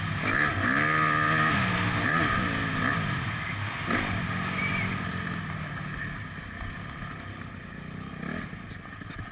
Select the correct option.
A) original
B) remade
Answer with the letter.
A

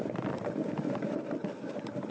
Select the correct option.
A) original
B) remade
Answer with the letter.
A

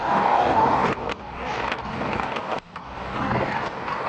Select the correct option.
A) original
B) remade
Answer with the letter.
B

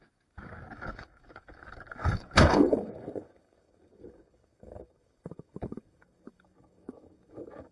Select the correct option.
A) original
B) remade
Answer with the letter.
B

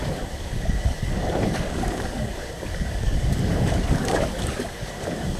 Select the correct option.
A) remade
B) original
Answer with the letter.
A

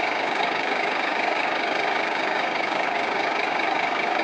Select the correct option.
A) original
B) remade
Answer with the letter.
B